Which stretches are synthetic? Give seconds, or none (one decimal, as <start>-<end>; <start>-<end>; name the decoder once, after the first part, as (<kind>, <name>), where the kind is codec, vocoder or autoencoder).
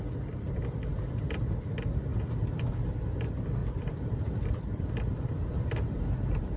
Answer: 3.6-6.6 (vocoder, BigVGAN v2)